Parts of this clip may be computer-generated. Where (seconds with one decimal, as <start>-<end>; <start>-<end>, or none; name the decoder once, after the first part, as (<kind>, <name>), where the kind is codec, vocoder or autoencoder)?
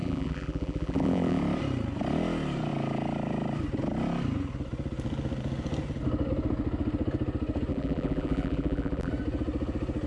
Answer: 0.0-1.4 (vocoder, BigVGAN v2); 7.7-9.1